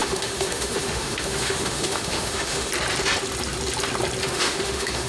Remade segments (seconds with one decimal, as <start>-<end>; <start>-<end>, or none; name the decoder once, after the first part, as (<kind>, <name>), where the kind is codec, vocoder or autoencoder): 0.0-2.7 (autoencoder, DAC-VAE); 4.2-5.1